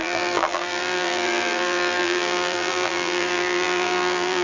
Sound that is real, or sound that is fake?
fake